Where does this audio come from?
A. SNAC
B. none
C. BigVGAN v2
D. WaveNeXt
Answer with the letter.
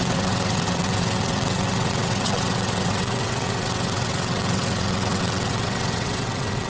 D